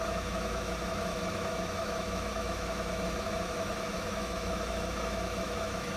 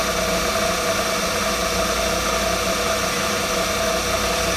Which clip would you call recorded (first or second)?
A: second